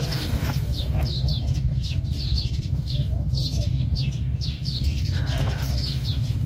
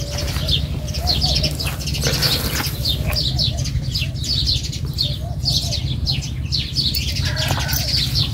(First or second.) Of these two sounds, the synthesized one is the first